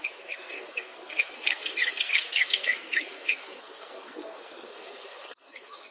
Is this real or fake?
fake